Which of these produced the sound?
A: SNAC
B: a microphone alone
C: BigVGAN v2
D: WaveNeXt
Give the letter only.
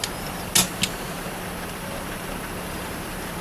B